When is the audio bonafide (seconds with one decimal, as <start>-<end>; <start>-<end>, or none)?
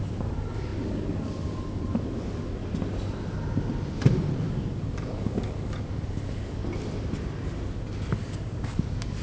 2.6-4.5; 6.6-8.1